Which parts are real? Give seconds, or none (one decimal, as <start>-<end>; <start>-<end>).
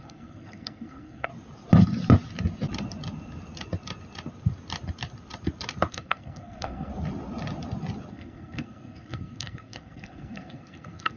1.3-5.9; 6.9-8.1